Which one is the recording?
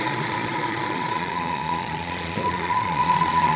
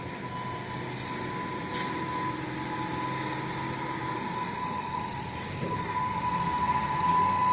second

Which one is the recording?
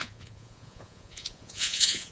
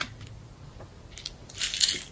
second